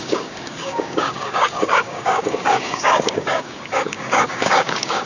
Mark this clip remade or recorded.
remade